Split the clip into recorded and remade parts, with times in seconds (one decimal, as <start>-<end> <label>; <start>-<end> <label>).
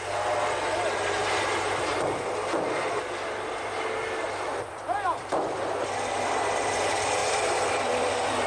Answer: 0.0-7.2 recorded; 7.2-8.1 remade; 8.1-8.5 recorded